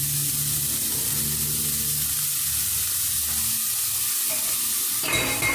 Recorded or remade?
recorded